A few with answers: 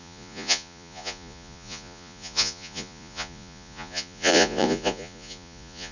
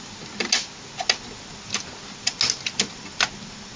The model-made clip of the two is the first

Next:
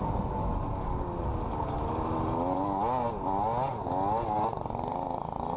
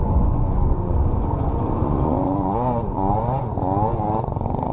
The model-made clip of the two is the second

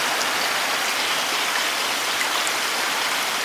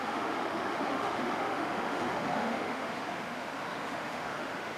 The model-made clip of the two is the second